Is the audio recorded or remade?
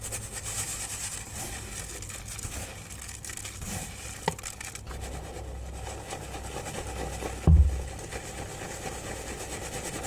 recorded